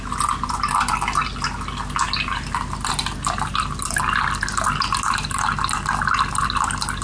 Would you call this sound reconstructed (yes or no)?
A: no